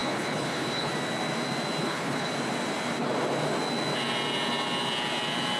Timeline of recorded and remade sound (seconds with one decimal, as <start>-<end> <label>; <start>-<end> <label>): 0.0-0.9 remade; 0.9-1.8 recorded; 1.8-2.3 remade; 2.3-5.6 recorded